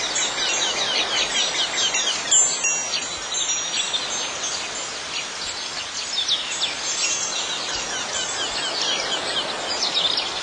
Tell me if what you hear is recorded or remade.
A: recorded